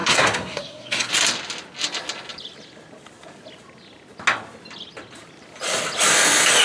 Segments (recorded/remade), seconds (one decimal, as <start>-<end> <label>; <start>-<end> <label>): 0.0-1.1 remade; 1.1-6.6 recorded